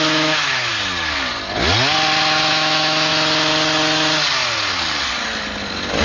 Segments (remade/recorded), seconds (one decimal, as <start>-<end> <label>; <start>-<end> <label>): 0.0-0.7 remade; 0.7-2.5 recorded; 2.5-3.1 remade; 3.1-6.0 recorded